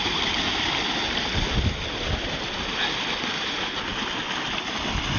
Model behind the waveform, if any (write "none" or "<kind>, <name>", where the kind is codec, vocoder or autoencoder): none